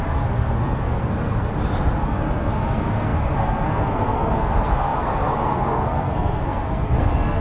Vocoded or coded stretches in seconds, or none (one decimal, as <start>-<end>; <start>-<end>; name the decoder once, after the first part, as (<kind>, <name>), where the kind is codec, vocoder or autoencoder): 0.0-1.5 (codec, SNAC); 2.0-7.4